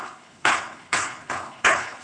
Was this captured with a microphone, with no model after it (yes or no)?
no